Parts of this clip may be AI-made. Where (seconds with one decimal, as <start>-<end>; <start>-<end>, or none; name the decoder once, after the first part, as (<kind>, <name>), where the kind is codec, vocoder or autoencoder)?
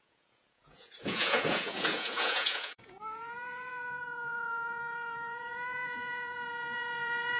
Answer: 0.0-7.4 (vocoder, Vocos)